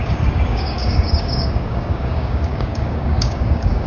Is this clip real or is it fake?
fake